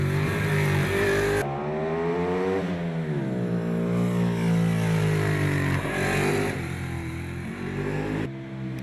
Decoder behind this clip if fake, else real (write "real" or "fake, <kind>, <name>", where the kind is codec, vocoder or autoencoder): real